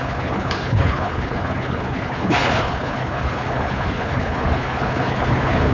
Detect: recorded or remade remade